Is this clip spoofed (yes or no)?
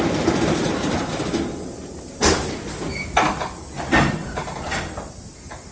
no